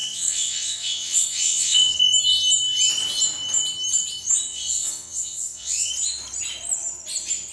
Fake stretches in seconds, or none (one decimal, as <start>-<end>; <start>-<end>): 0.0-2.0; 4.5-5.9

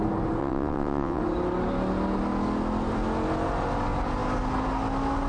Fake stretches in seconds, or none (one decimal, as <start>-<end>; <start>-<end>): 0.4-1.2

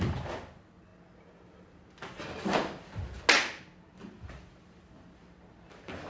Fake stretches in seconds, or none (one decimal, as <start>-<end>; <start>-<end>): none

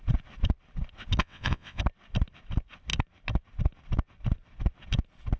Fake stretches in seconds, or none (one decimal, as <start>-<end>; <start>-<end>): 1.2-1.8

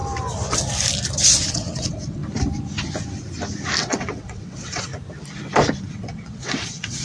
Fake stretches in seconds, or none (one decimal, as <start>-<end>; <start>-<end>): 1.5-2.2; 3.8-4.9; 5.9-7.0

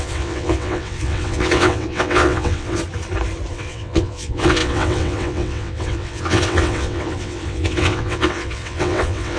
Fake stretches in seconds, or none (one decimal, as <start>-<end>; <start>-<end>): 0.0-2.8; 3.5-9.4

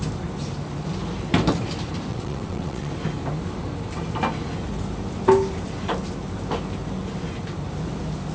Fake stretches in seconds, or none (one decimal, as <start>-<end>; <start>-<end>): 2.1-2.9